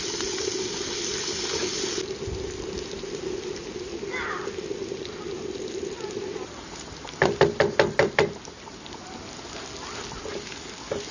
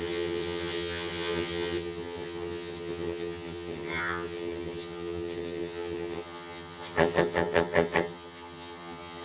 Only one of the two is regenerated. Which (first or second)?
second